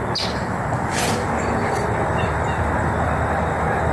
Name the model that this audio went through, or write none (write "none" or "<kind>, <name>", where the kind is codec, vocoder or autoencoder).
none